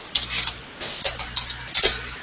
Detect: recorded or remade recorded